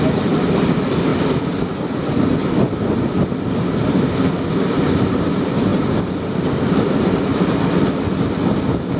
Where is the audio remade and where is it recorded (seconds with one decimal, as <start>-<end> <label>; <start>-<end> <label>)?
0.0-9.0 recorded